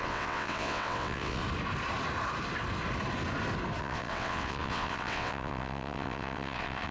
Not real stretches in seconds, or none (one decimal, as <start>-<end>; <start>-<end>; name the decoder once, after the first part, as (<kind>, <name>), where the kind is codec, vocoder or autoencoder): 0.0-1.4 (vocoder, WaveNeXt); 3.8-6.9